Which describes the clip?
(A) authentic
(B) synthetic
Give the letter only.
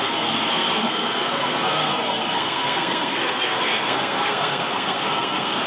B